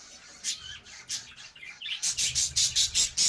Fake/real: real